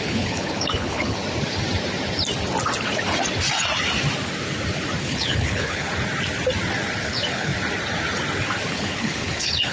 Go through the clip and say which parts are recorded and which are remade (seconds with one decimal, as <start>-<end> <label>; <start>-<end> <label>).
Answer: 0.0-1.2 remade; 1.2-5.0 recorded; 5.0-5.9 remade; 5.9-7.0 recorded; 7.0-7.5 remade; 7.5-8.7 recorded; 8.7-9.7 remade